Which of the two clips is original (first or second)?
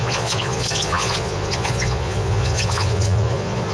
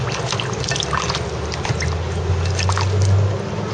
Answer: second